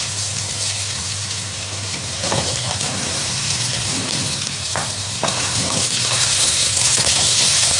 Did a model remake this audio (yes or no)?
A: yes